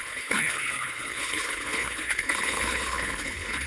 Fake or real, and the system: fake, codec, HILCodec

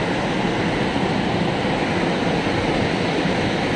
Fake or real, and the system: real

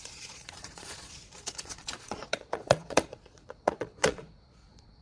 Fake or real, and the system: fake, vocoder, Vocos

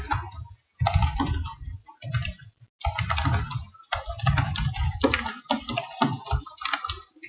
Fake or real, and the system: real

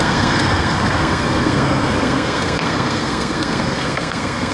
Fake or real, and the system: fake, codec, SNAC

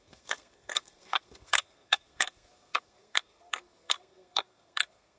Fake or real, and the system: fake, codec, SNAC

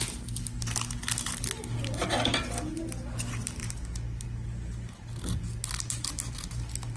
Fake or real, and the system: real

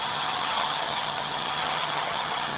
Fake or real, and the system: fake, vocoder, HiFi-GAN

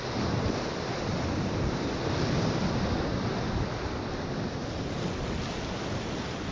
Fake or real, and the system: real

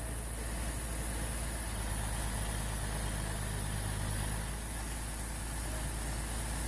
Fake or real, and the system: real